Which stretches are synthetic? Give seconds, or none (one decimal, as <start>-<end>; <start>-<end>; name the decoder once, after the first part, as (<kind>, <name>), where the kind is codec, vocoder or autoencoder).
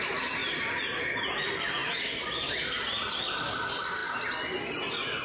0.0-5.2 (vocoder, BigVGAN v2)